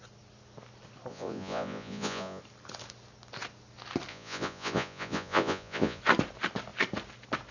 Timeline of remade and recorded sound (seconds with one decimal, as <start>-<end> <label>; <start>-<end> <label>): 0.0-1.1 recorded; 1.1-2.4 remade; 2.4-4.1 recorded; 4.1-6.0 remade; 6.0-7.5 recorded